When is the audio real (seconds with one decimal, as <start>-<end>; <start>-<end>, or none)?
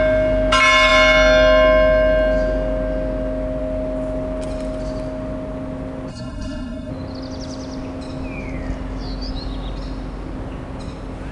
0.0-6.1; 6.9-11.3